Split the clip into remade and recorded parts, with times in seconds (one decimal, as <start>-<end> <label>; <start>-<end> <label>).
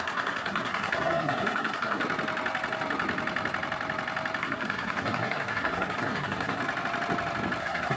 0.0-2.0 remade; 2.0-4.4 recorded; 4.4-6.6 remade; 6.6-7.6 recorded; 7.6-8.0 remade